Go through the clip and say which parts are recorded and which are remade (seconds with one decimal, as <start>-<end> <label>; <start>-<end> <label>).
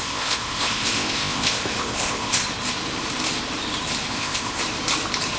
0.0-2.4 remade; 2.4-4.1 recorded; 4.1-4.6 remade; 4.6-5.4 recorded